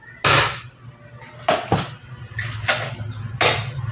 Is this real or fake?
real